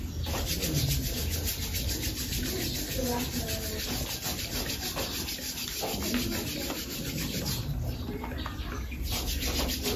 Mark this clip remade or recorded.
recorded